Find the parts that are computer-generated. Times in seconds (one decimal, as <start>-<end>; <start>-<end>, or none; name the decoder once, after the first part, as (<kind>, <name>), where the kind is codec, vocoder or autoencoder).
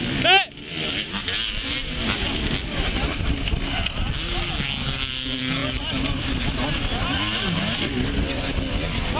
none